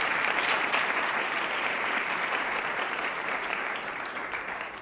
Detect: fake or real fake